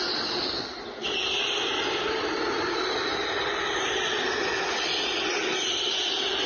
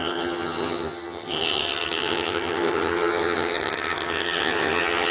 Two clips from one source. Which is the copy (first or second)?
second